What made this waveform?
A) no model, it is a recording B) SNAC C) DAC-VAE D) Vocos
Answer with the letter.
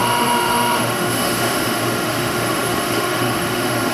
C